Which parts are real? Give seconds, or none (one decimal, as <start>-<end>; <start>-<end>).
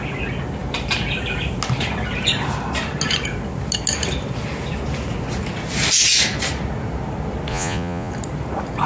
0.0-7.5; 8.1-8.9